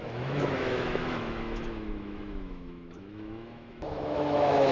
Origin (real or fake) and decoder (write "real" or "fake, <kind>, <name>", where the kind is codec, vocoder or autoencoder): fake, autoencoder, DAC-VAE